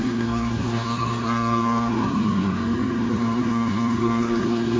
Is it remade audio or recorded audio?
remade